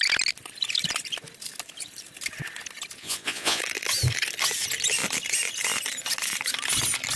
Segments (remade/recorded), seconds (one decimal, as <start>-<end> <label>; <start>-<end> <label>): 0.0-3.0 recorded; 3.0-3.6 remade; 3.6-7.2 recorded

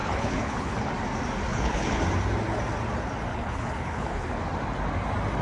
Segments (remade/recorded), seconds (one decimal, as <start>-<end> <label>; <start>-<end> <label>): 0.0-0.9 remade; 0.9-1.5 recorded; 1.5-2.0 remade; 2.0-3.3 recorded; 3.3-4.4 remade; 4.4-5.4 recorded

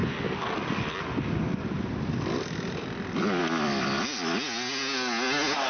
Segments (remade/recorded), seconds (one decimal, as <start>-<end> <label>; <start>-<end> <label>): 0.0-5.7 recorded